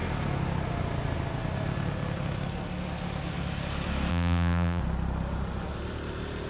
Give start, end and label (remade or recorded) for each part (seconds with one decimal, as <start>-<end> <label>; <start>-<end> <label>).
0.0-4.1 recorded; 4.1-4.8 remade; 4.8-6.5 recorded